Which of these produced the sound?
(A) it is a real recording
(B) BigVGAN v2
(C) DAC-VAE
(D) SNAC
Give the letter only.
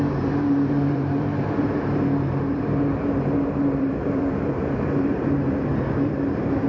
B